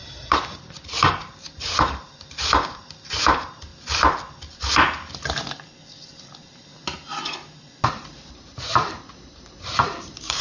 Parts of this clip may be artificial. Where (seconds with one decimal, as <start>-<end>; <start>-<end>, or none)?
0.0-3.7; 7.9-10.4